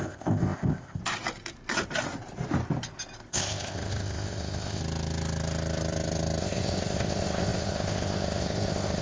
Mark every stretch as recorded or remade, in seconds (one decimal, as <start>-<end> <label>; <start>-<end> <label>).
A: 0.0-1.0 remade; 1.0-3.3 recorded; 3.3-4.8 remade; 4.8-6.4 recorded; 6.4-9.0 remade